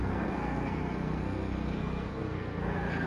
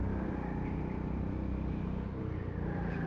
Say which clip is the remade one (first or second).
first